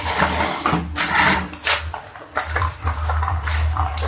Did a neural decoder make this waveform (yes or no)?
no